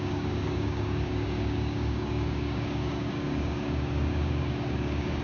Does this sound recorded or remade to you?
remade